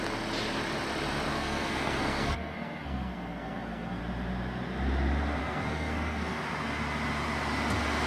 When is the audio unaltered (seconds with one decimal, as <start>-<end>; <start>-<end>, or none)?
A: 0.0-1.3; 4.0-5.4; 6.4-8.1